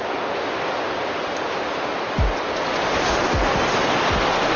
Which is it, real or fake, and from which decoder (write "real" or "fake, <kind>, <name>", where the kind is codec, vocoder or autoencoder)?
real